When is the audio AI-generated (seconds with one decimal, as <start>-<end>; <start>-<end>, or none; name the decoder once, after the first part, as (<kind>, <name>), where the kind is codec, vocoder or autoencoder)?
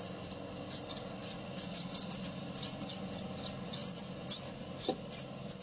none